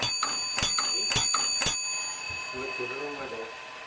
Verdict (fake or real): real